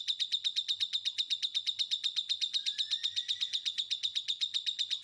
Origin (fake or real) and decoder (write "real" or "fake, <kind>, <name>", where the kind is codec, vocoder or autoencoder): real